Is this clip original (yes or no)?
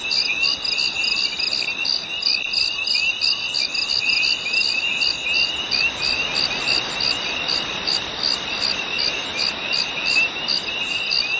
yes